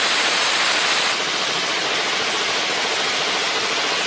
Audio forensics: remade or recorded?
recorded